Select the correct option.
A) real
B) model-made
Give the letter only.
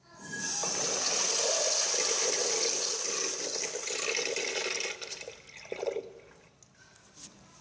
A